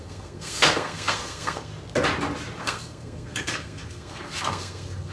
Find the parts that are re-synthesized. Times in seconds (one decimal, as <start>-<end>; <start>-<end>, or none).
0.0-1.7; 2.6-5.1